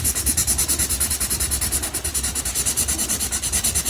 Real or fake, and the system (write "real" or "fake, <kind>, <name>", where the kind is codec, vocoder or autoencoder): real